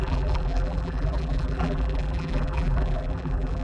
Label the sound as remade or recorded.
remade